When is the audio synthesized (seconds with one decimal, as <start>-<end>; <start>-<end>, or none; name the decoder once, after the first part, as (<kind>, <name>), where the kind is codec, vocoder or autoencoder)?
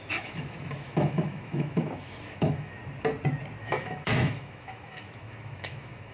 0.0-2.8 (autoencoder, DAC-VAE); 3.6-6.1